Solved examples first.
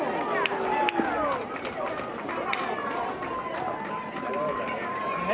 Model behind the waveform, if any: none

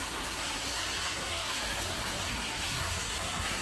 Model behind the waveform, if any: codec, SNAC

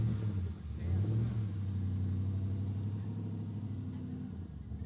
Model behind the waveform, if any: none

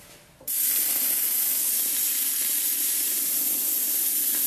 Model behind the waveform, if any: none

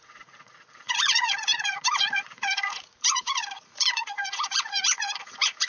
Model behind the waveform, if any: vocoder, Vocos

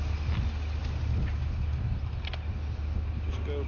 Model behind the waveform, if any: none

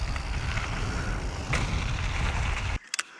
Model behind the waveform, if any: none